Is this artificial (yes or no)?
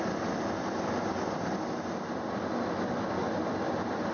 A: no